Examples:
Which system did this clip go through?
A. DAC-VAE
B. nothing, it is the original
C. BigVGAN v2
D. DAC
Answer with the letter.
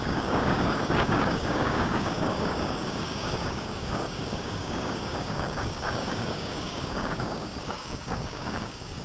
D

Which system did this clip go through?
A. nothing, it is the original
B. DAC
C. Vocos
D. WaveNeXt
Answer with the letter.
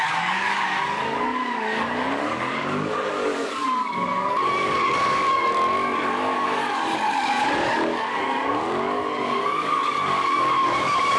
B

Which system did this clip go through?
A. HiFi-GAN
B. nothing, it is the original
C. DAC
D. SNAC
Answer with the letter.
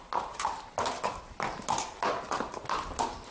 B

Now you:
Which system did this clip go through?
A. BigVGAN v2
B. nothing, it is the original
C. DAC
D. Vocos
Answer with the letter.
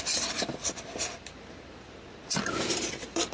B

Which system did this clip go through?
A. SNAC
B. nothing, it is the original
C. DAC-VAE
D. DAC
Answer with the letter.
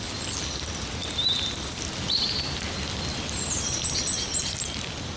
B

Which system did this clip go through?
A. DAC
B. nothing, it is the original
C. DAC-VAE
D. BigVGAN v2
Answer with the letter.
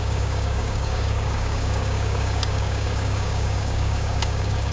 A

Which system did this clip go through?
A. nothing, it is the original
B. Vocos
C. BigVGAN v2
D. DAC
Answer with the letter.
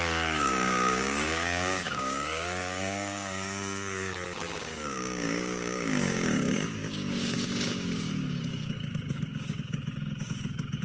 D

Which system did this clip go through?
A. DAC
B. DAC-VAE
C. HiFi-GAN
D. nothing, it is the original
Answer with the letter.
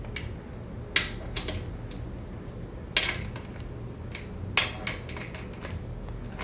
D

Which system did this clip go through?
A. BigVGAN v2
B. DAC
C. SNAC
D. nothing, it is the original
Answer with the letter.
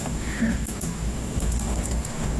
B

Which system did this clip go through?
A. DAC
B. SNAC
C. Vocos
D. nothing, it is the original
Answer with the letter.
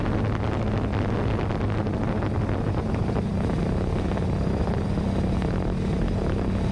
D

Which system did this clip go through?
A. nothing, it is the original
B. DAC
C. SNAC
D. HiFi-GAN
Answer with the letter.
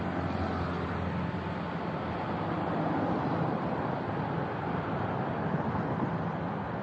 A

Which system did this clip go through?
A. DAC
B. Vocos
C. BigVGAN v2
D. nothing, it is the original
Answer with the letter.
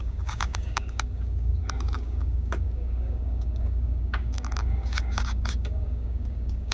A